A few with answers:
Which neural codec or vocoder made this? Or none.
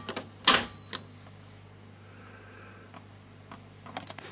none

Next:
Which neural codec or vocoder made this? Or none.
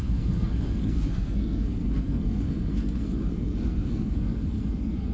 codec, SNAC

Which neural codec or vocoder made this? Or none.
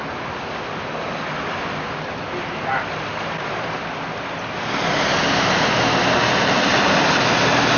none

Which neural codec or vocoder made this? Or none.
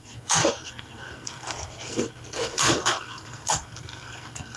codec, SNAC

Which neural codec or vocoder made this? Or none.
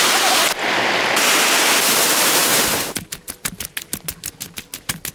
none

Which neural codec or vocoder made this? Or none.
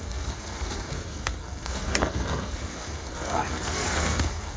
codec, SNAC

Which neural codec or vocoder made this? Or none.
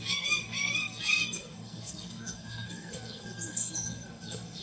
codec, SNAC